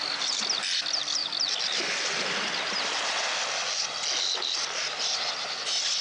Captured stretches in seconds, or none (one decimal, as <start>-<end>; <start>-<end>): 0.0-6.0